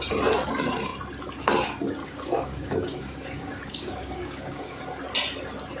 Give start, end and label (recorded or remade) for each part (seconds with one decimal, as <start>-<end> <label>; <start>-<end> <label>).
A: 0.0-2.0 recorded; 2.0-4.8 remade; 4.8-5.8 recorded